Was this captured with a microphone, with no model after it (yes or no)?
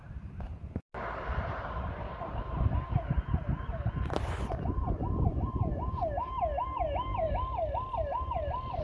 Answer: yes